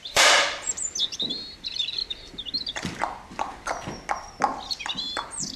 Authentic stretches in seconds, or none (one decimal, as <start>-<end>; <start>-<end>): 2.0-4.7